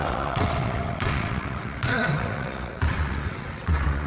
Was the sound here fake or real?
fake